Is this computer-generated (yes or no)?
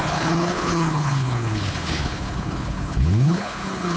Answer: yes